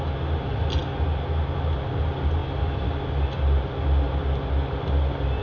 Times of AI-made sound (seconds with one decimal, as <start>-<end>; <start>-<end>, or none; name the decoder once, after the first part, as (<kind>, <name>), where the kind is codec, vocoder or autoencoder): none